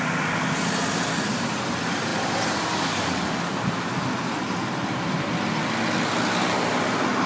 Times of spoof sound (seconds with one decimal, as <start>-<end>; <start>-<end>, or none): none

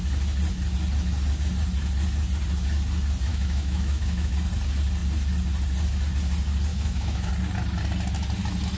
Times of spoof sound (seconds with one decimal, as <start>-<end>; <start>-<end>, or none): 3.3-4.3; 6.7-7.3

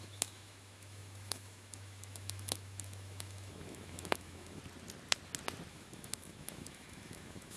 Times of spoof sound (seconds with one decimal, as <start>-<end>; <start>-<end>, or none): 0.0-4.6; 5.7-7.6

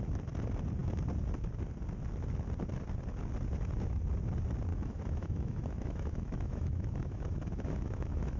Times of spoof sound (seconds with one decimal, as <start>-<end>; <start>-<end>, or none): 4.7-8.4

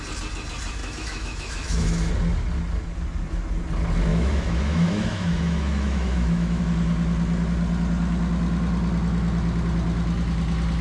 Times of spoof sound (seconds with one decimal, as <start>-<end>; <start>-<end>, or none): 0.8-2.1; 4.1-6.6

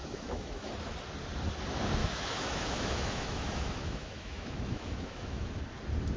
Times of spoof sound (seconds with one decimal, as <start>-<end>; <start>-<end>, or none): 0.0-0.7; 2.0-5.6